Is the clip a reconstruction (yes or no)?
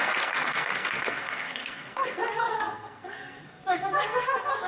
yes